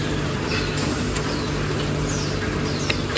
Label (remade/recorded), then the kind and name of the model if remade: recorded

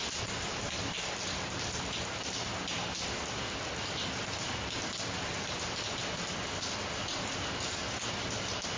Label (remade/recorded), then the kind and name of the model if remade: recorded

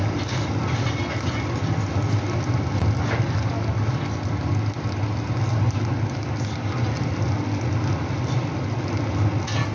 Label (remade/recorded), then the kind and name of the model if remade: recorded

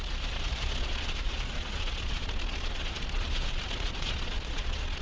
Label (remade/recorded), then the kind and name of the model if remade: remade, vocoder, Vocos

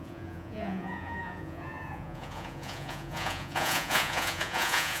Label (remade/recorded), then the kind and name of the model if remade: remade, vocoder, Vocos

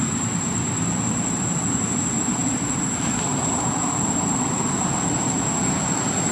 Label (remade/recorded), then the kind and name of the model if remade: remade, vocoder, BigVGAN v2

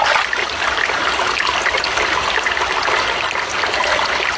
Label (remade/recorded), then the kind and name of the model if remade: recorded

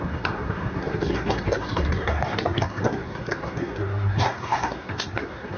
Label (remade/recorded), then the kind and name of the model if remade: remade, codec, SNAC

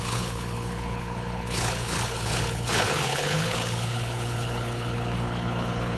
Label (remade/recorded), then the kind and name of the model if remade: remade, codec, HILCodec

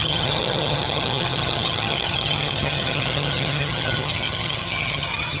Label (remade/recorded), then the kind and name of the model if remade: remade, vocoder, HiFi-GAN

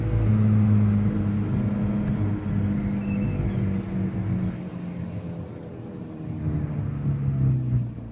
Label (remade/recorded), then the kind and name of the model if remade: recorded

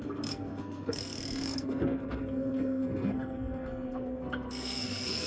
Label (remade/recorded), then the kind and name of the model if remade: remade, codec, SNAC